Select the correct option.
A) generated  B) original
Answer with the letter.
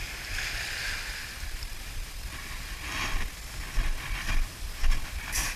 B